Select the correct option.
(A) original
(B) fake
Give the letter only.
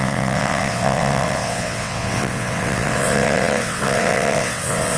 B